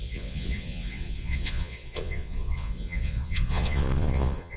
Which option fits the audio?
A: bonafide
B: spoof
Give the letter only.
B